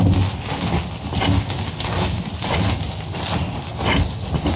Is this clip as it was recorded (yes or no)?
yes